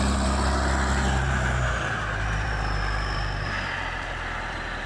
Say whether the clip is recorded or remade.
remade